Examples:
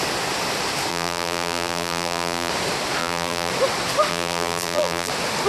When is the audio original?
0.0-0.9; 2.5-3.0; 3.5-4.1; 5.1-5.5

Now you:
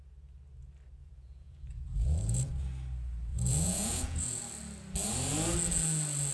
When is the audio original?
0.0-1.0; 2.5-3.3; 4.4-6.3

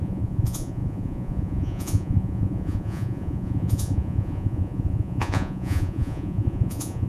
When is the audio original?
none